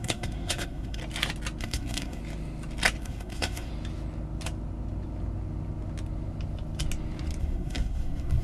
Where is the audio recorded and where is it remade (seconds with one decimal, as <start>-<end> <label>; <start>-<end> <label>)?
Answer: 0.0-1.0 remade; 1.0-1.6 recorded; 1.6-2.2 remade; 2.2-3.0 recorded; 3.0-3.7 remade; 3.7-7.4 recorded; 7.4-8.4 remade